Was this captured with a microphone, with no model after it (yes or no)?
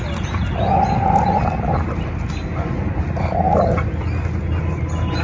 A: yes